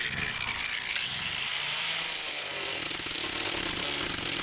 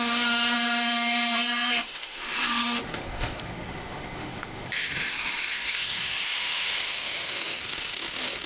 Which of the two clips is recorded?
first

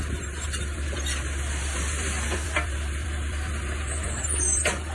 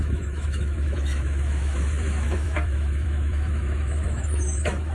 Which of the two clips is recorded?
first